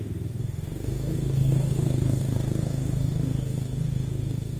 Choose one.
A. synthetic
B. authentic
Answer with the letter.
A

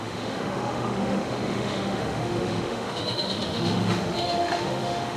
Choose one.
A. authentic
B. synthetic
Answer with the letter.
B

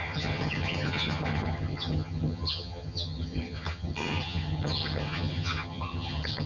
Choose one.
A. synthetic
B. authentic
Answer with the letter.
A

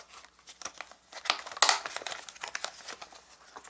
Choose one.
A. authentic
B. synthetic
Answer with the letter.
A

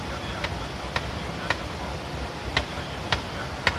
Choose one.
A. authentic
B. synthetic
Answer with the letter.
A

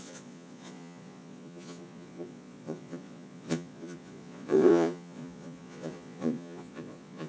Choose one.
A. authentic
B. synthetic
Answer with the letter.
B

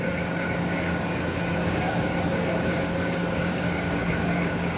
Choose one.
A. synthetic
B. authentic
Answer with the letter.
A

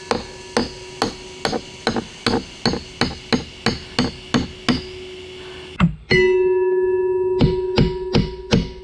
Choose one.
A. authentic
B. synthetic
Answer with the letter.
A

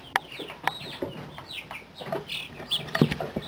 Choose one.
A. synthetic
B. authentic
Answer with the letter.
B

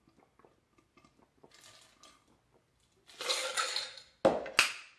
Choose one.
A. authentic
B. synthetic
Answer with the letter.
A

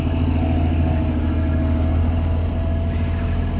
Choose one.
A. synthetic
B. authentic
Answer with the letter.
B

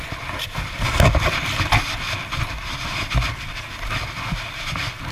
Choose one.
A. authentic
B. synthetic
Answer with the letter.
B